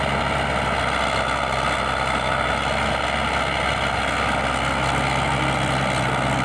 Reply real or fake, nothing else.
real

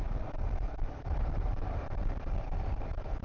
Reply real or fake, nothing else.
fake